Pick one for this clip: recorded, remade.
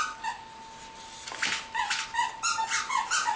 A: recorded